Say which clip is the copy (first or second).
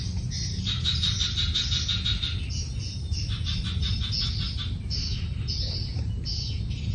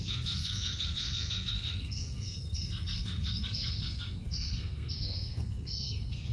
second